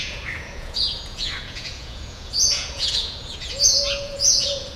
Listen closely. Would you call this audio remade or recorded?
remade